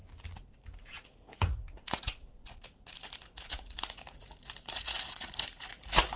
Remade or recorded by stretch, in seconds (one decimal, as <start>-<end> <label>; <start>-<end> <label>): 0.0-0.9 recorded; 0.9-6.2 remade